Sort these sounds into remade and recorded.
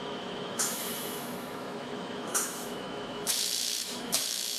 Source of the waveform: remade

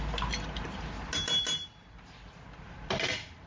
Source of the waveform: recorded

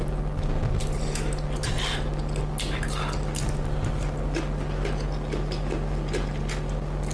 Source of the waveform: recorded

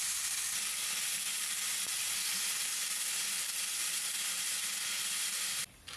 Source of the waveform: recorded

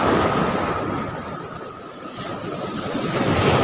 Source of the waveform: recorded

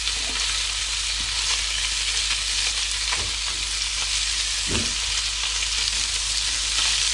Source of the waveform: recorded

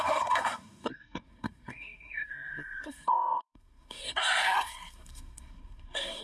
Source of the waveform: remade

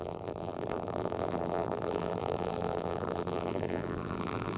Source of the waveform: remade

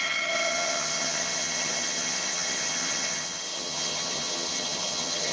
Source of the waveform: remade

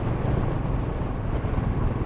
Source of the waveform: recorded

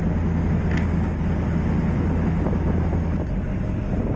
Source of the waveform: recorded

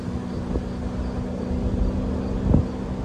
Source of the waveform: recorded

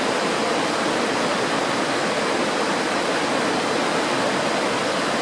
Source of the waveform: recorded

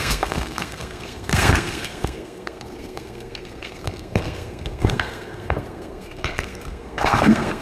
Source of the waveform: remade